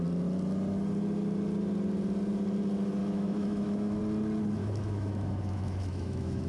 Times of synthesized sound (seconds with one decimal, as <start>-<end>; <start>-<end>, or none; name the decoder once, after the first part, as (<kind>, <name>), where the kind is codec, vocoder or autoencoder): 3.0-4.0 (autoencoder, DAC-VAE); 4.6-6.5